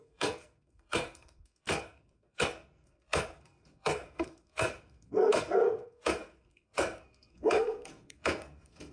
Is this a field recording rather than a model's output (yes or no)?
no